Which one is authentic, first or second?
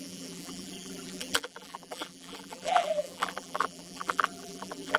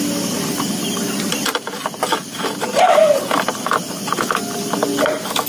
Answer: second